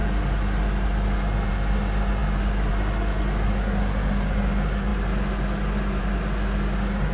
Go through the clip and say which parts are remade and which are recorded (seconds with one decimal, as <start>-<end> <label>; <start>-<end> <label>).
0.0-7.1 recorded